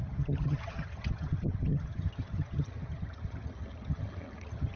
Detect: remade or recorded remade